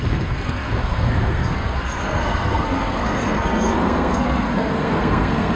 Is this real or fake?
fake